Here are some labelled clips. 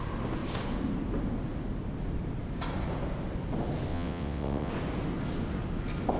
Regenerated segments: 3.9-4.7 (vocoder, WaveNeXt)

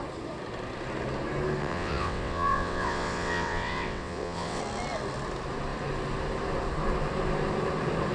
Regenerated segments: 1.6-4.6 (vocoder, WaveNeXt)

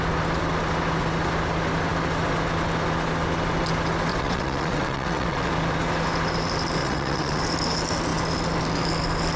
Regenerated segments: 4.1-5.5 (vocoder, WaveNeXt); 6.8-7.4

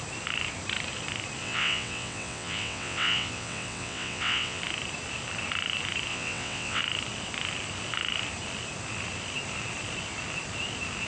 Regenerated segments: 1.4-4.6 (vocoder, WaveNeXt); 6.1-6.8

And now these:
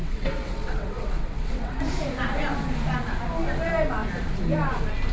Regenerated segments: 0.0-1.8 (vocoder, WaveNeXt)

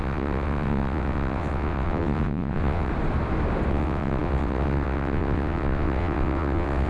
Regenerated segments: 0.0-2.9 (vocoder, WaveNeXt); 3.7-6.9